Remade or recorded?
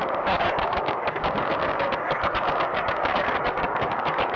remade